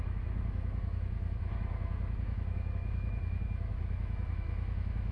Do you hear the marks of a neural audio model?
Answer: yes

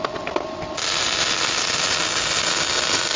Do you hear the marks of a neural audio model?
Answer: no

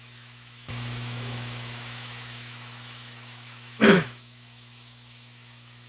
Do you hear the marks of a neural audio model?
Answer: yes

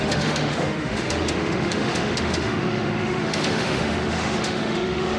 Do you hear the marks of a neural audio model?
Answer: yes